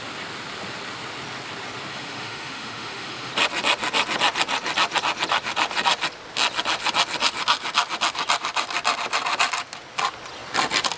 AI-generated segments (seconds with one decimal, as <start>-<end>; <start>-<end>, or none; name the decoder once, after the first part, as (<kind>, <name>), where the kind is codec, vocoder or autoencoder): 1.9-3.3 (autoencoder, DAC-VAE)